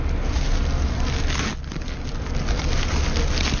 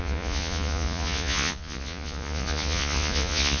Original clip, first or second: first